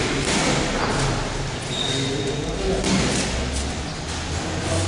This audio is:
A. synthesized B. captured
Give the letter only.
B